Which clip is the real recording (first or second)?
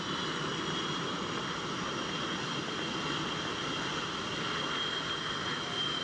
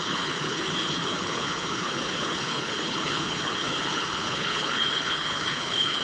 first